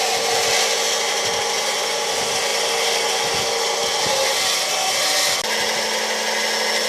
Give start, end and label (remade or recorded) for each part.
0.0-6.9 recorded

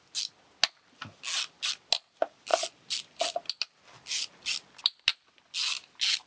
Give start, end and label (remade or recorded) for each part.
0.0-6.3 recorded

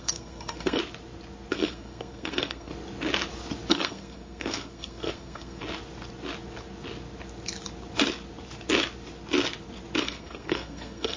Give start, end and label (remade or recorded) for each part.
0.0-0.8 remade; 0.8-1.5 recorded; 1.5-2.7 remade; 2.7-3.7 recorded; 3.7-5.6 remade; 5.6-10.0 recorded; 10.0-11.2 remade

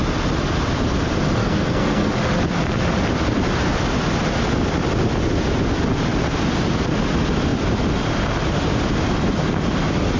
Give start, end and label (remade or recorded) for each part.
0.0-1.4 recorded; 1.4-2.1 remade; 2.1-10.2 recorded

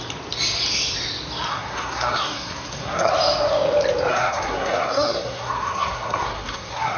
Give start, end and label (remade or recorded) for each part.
0.0-1.5 recorded; 1.5-3.1 remade; 3.1-4.1 recorded; 4.1-7.0 remade

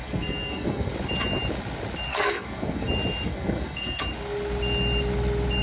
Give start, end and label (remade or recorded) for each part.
0.0-0.9 remade; 0.9-2.1 recorded; 2.1-2.9 remade; 2.9-3.3 recorded; 3.3-4.0 remade; 4.0-5.6 recorded